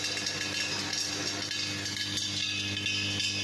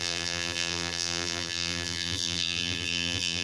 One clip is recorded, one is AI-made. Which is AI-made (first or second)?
second